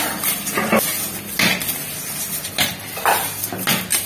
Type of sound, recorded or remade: recorded